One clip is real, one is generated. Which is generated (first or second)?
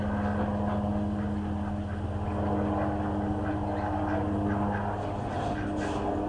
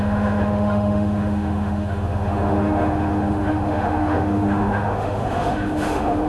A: second